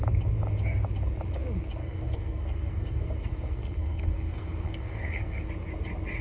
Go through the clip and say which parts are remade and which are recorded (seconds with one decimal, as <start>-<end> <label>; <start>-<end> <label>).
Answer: 0.0-1.8 recorded; 1.8-5.5 remade; 5.5-6.2 recorded